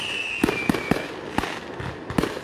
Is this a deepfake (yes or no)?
no